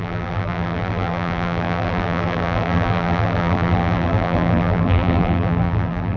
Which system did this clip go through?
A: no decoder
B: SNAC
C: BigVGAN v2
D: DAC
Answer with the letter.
C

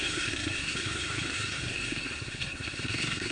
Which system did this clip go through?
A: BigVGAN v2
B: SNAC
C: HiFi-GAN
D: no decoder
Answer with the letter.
B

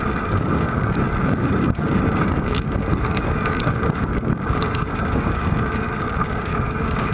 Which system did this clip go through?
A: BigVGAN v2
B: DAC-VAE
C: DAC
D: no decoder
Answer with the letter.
C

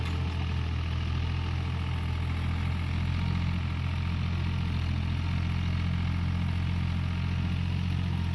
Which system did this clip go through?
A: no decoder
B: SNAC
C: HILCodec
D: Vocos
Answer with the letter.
A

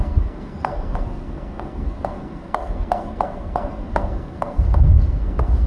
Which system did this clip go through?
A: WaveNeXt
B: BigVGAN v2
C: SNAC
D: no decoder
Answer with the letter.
C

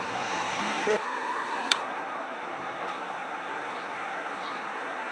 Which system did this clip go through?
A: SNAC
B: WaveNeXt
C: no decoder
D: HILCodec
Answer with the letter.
A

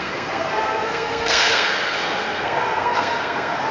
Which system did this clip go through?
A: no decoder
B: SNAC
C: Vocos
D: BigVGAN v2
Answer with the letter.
B